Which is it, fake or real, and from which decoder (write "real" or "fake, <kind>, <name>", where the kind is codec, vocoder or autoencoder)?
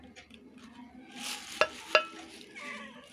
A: real